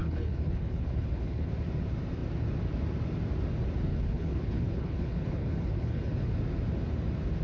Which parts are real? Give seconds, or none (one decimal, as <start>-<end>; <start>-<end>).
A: 1.5-3.9; 6.3-7.4